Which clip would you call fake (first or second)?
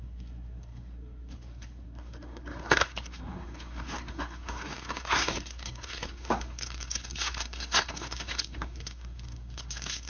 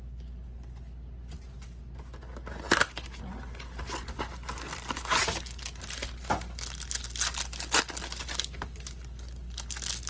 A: first